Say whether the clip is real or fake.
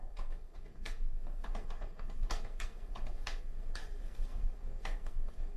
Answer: fake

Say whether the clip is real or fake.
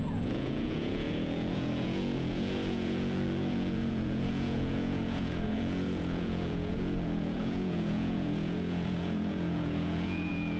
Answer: fake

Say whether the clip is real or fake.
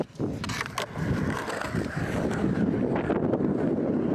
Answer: real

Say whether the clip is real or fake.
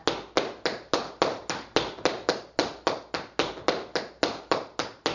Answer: real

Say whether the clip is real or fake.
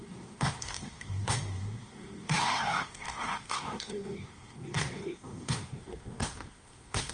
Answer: fake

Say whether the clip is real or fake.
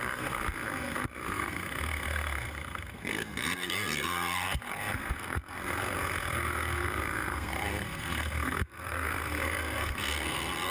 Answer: fake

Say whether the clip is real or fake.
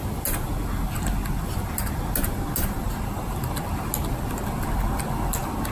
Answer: real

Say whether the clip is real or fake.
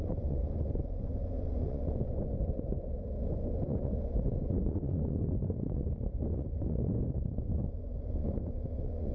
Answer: fake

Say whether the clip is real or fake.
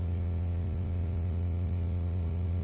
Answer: fake